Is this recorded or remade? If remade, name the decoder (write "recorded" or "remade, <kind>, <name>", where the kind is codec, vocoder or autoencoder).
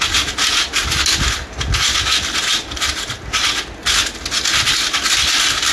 recorded